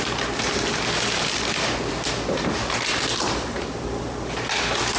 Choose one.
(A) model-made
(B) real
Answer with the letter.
B